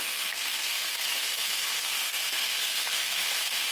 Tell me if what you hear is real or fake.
fake